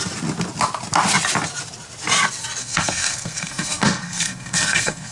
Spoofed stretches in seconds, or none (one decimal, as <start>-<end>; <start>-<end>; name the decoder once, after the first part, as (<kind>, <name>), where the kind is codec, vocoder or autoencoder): 2.6-5.1 (codec, SNAC)